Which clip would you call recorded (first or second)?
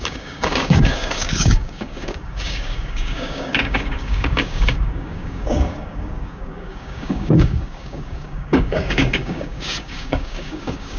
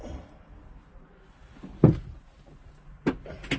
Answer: second